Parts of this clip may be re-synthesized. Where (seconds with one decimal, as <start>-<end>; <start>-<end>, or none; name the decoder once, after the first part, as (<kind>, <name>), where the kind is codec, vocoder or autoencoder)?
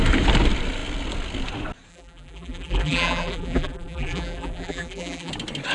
1.9-5.3 (vocoder, BigVGAN v2)